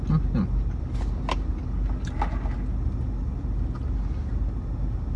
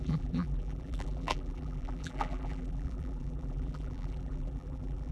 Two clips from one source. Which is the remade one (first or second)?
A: second